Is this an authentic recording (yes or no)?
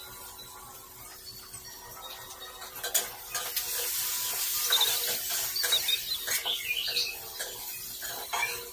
yes